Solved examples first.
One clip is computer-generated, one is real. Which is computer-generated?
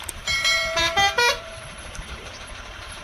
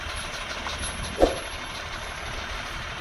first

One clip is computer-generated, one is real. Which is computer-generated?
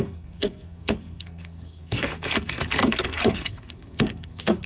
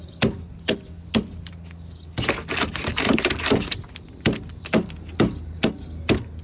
first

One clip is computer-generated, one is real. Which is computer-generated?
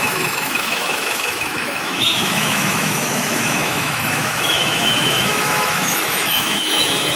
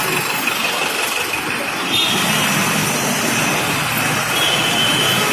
first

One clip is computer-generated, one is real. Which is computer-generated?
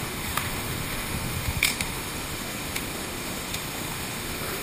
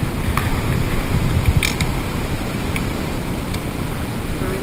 first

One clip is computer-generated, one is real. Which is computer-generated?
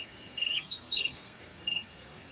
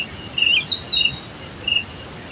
first